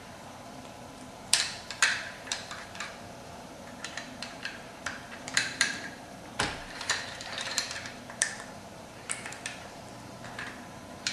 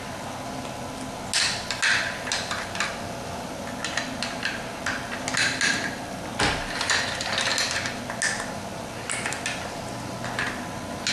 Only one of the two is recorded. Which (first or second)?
second